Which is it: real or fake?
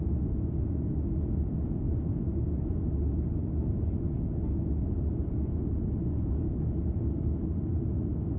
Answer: real